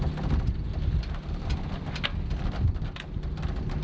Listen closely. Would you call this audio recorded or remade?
recorded